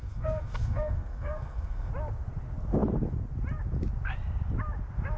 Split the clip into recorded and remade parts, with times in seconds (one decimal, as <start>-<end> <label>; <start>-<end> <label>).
0.0-1.9 remade; 1.9-5.2 recorded